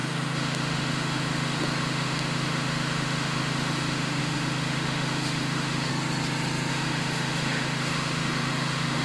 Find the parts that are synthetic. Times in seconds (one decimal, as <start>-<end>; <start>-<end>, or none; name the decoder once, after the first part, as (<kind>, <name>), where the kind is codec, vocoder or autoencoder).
0.0-5.9 (autoencoder, DAC-VAE); 6.7-9.0